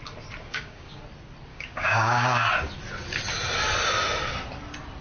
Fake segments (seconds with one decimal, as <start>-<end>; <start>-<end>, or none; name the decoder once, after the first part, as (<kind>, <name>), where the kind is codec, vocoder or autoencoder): 0.4-1.0 (codec, DAC); 1.5-2.5